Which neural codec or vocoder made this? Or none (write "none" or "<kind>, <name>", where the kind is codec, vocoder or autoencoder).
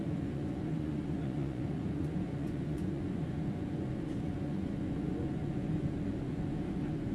vocoder, Vocos